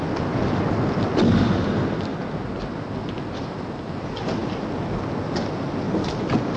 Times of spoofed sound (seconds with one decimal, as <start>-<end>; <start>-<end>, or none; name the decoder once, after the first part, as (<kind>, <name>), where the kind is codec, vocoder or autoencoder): none